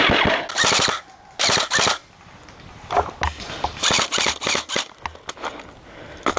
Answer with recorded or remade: recorded